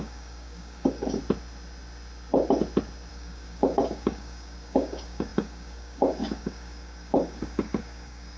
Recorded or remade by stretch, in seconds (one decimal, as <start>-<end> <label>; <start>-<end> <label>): 0.0-1.2 remade; 1.2-3.1 recorded; 3.1-8.4 remade